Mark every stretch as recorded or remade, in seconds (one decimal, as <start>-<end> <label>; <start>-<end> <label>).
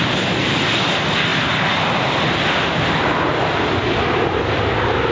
0.0-5.1 recorded